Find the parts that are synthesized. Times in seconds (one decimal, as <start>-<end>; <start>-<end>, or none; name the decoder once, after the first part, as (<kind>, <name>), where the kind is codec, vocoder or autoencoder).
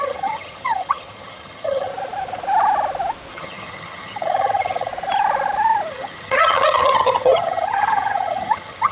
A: 0.0-1.9 (vocoder, HiFi-GAN); 3.3-4.9; 5.9-8.9